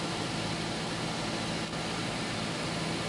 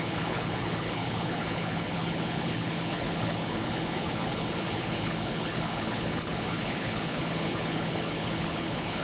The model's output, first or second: second